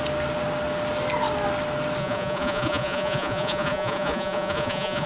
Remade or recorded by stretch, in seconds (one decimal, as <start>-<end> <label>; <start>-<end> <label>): 0.0-2.0 recorded; 2.0-5.1 remade